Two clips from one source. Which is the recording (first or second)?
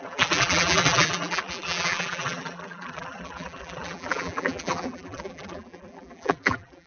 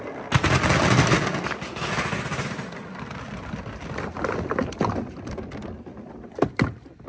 second